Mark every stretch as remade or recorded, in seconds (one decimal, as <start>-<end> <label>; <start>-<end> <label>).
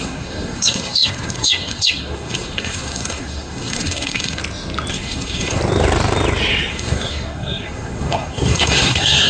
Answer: 0.0-4.4 remade; 4.4-4.9 recorded; 4.9-5.6 remade; 5.6-6.7 recorded; 6.7-9.3 remade